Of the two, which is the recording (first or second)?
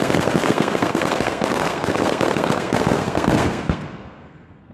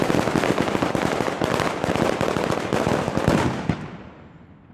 second